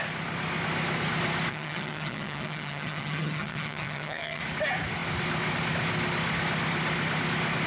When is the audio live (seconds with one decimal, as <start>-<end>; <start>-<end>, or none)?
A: 0.0-1.5; 4.4-7.7